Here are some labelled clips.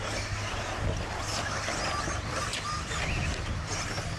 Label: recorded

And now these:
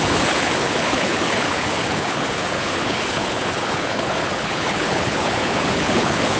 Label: remade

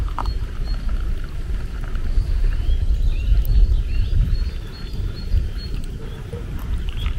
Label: remade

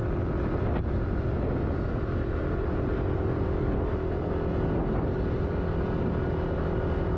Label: recorded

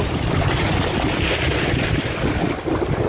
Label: recorded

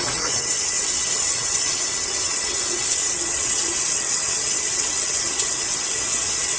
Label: remade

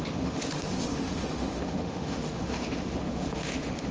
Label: remade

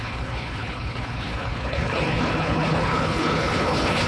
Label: remade